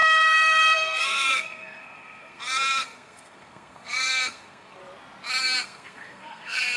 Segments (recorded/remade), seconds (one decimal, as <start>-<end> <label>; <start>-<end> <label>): 0.0-4.8 remade; 4.8-5.4 recorded; 5.4-6.8 remade